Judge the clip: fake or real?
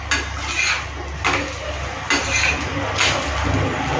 real